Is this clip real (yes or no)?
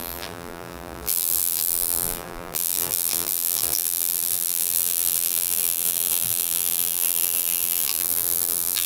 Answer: no